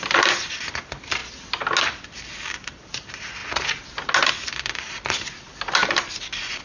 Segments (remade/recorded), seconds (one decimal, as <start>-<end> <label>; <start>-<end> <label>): 0.0-1.2 remade; 1.2-1.8 recorded; 1.8-3.4 remade; 3.4-4.3 recorded; 4.3-6.6 remade